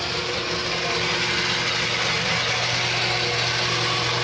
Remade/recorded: recorded